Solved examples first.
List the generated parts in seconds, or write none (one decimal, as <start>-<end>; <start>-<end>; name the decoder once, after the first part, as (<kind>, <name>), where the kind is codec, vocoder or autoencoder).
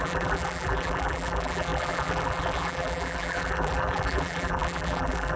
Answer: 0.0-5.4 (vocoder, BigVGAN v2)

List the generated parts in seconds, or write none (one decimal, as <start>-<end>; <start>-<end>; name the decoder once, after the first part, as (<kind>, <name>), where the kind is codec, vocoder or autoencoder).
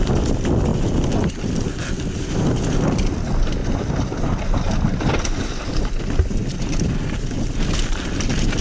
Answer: 3.6-4.3 (vocoder, BigVGAN v2)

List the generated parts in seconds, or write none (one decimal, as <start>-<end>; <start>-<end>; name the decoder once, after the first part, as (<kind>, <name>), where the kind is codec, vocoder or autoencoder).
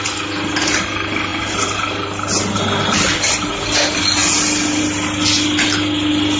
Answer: none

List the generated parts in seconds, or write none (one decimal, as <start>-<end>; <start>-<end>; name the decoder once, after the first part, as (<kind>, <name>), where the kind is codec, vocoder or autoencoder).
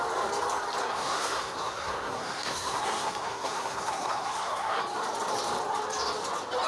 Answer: 0.8-4.8 (codec, SNAC)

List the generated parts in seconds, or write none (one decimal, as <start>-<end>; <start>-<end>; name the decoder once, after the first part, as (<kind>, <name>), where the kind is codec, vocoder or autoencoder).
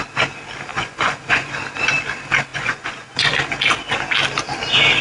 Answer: 0.7-1.5 (vocoder, Vocos); 2.5-3.3